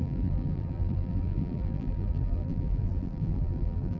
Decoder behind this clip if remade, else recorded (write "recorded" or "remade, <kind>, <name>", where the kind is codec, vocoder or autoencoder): remade, vocoder, BigVGAN v2